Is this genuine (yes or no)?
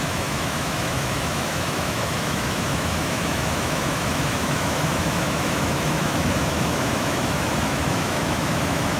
no